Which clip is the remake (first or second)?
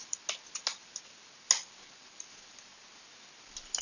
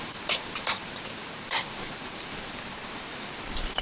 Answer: second